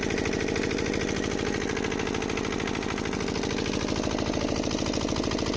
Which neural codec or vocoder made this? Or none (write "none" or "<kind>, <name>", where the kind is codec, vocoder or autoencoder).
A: none